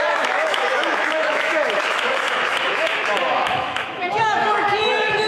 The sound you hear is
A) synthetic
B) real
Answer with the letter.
A